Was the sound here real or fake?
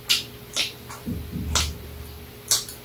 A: real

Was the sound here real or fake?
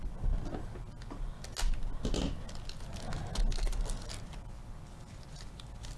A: real